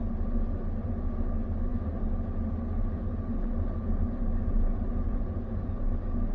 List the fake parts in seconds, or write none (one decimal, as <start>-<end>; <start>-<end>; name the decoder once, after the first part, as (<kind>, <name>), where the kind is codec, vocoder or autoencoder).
none